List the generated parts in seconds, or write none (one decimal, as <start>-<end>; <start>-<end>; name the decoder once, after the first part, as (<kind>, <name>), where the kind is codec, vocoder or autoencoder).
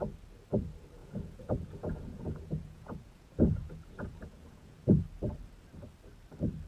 1.0-5.0 (vocoder, Vocos)